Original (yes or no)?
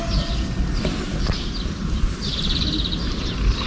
yes